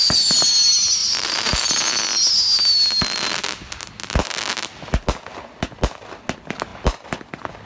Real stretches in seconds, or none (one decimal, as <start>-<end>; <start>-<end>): 0.0-1.0; 1.7-7.7